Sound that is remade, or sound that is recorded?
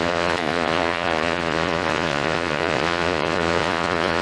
remade